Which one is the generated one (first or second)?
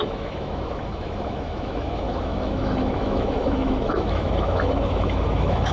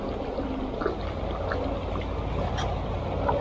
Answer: first